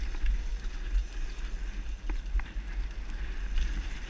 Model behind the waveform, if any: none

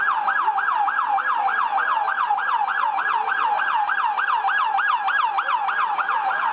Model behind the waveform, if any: none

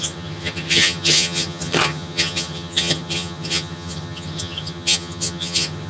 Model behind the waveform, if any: vocoder, HiFi-GAN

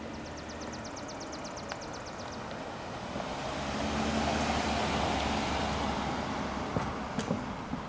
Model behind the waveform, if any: none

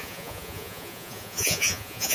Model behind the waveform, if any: vocoder, Vocos